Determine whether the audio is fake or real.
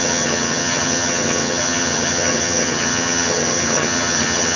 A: fake